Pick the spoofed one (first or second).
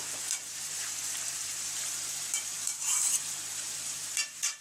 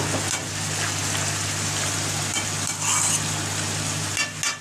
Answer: first